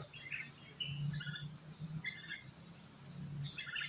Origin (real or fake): real